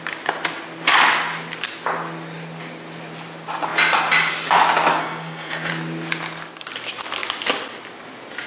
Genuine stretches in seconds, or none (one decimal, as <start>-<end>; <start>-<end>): 0.0-5.0; 5.7-8.5